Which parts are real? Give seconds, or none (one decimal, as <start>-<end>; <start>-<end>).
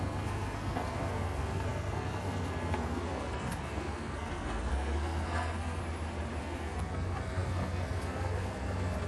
5.8-6.4